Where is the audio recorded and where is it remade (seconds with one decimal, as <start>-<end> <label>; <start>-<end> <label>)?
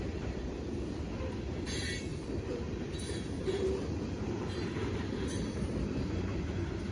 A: 0.0-2.1 recorded; 2.1-6.2 remade; 6.2-6.9 recorded